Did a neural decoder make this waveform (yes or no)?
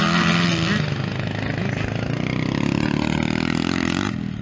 no